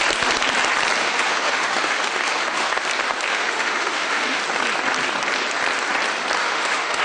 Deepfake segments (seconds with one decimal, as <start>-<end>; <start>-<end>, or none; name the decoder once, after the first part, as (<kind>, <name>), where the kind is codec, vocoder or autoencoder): 1.0-2.7 (autoencoder, DAC-VAE); 3.3-4.4; 6.4-7.0